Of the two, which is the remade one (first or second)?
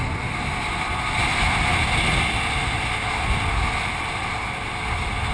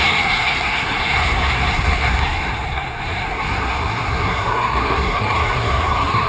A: second